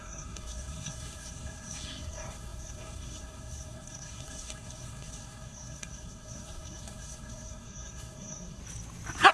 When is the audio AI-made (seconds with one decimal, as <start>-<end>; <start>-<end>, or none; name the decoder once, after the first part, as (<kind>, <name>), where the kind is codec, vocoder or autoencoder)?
0.0-8.6 (codec, SNAC)